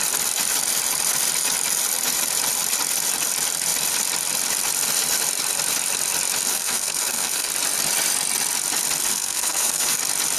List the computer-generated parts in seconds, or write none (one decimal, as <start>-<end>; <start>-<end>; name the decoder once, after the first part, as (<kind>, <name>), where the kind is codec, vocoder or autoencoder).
6.5-7.5 (codec, SNAC); 9.1-10.0